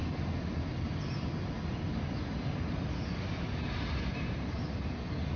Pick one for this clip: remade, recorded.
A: recorded